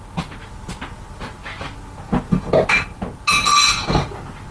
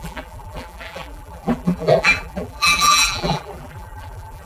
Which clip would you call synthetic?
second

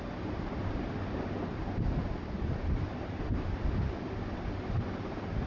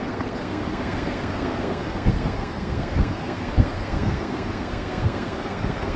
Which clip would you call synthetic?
second